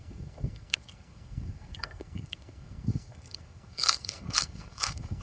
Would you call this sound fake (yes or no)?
yes